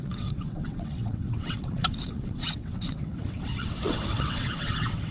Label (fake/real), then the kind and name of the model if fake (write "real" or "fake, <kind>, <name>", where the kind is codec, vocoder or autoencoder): fake, vocoder, WaveNeXt